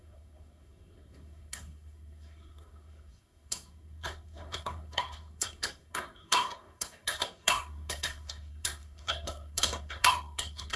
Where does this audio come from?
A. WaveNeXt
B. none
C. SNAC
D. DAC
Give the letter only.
C